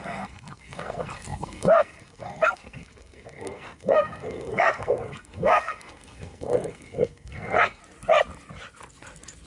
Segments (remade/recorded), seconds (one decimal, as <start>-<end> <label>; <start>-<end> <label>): 0.0-7.8 remade; 7.8-9.5 recorded